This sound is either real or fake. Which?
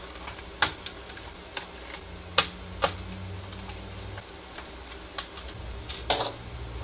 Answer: real